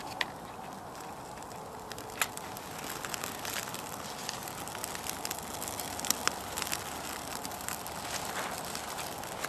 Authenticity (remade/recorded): recorded